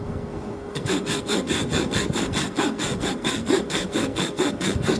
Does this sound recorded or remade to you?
remade